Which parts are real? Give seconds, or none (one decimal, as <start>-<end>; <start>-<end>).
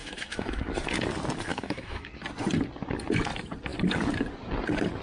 0.6-1.5; 2.1-5.0